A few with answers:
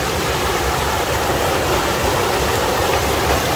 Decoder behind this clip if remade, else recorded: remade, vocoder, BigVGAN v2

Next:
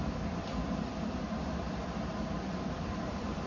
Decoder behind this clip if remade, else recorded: remade, vocoder, BigVGAN v2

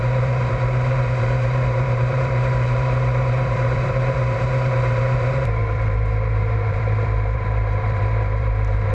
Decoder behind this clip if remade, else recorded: remade, vocoder, BigVGAN v2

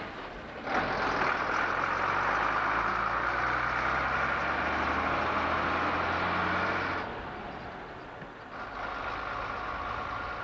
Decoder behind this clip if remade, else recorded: recorded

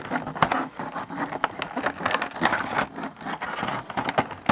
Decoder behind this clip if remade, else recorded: recorded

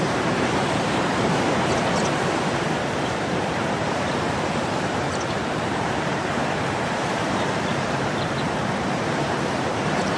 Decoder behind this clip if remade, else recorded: remade, vocoder, BigVGAN v2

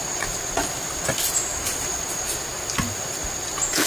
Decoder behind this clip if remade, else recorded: recorded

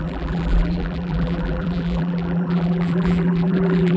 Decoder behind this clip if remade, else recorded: remade, vocoder, BigVGAN v2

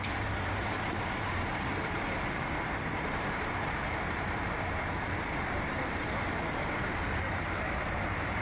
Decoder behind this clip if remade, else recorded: remade, vocoder, BigVGAN v2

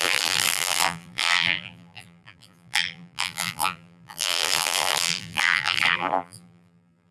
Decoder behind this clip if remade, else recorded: remade, vocoder, BigVGAN v2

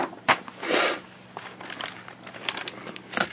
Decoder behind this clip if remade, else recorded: remade, vocoder, BigVGAN v2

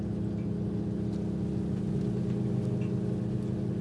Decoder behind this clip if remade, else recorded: recorded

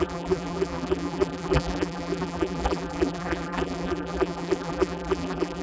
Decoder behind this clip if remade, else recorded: remade, vocoder, BigVGAN v2